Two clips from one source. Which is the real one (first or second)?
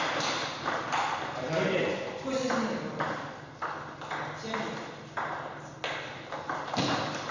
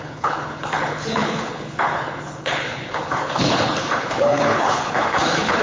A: first